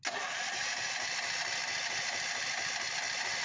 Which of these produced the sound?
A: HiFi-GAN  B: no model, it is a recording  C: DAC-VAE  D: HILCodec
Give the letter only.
B